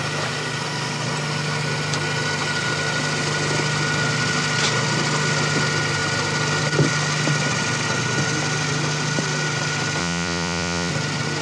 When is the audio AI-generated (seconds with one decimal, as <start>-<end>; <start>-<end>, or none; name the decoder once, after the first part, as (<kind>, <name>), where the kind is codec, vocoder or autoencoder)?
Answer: 10.0-10.9 (vocoder, Vocos)